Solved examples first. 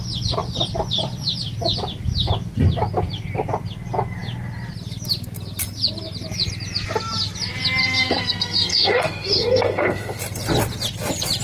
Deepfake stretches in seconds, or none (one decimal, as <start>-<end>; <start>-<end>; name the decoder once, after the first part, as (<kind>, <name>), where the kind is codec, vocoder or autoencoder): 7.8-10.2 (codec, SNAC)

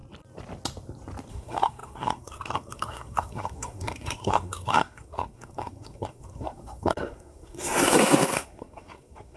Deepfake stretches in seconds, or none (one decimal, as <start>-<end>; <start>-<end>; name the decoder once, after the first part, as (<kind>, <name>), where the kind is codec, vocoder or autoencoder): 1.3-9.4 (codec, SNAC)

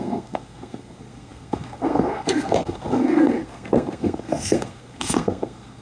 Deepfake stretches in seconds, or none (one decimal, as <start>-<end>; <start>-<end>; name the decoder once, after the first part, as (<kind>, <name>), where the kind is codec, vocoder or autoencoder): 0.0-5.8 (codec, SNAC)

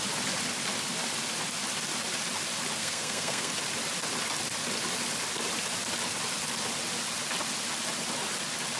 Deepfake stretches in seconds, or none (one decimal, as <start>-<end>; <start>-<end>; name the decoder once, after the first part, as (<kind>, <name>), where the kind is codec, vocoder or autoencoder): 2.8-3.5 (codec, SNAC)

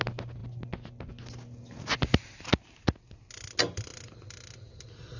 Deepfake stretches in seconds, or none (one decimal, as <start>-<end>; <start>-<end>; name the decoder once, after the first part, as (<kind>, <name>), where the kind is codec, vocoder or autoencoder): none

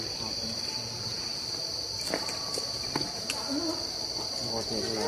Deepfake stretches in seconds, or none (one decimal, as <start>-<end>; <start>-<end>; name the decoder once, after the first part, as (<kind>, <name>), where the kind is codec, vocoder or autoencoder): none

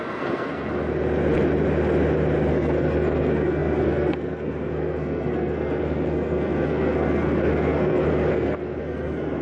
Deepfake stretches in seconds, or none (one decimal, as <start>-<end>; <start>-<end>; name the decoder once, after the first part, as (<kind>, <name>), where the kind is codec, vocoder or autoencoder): 0.0-0.7 (codec, SNAC); 2.5-9.4